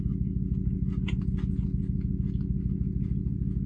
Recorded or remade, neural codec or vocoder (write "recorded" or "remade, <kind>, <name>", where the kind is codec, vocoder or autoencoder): recorded